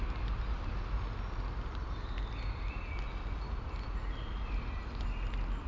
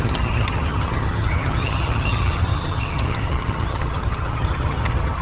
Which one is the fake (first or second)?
second